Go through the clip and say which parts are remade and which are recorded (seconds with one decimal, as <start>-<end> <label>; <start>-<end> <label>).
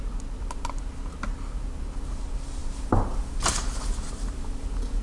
0.0-5.0 recorded